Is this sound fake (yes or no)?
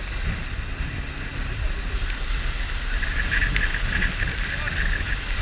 no